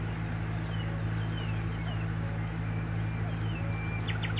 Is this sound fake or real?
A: real